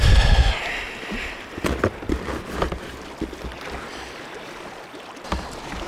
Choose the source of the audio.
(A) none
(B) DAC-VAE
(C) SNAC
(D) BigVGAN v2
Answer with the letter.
A